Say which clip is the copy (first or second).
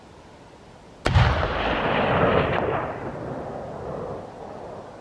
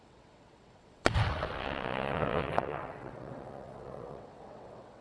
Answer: second